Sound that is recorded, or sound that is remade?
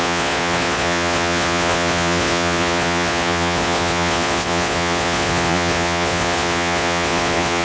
remade